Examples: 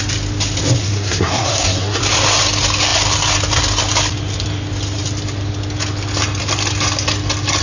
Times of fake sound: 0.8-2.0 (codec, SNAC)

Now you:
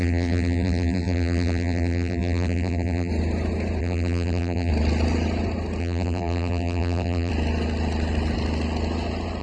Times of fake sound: 0.0-3.1 (vocoder, BigVGAN v2); 3.8-4.7; 5.8-7.3

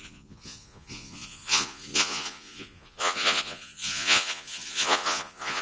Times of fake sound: 0.0-5.6 (vocoder, Vocos)

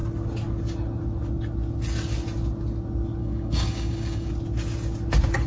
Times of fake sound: 3.2-4.3 (codec, DAC)

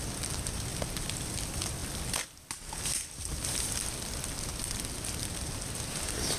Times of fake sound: none